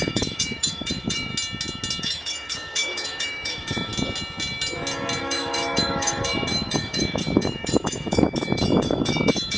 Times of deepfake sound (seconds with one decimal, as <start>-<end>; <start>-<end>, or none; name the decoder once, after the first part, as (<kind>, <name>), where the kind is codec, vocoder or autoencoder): 0.0-1.3 (autoencoder, DAC-VAE); 2.0-3.9; 5.2-9.6